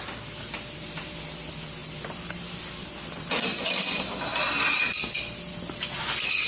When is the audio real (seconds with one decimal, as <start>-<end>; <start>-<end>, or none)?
0.0-6.5